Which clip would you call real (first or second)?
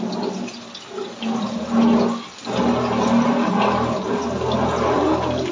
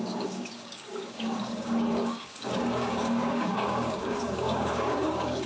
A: first